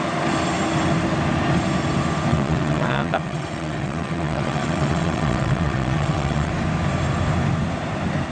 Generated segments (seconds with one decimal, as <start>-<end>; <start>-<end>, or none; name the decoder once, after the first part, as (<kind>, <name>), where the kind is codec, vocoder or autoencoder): 2.3-6.5 (vocoder, WaveNeXt)